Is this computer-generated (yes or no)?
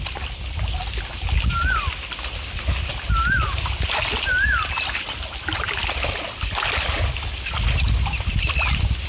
no